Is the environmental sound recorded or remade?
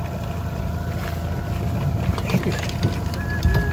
recorded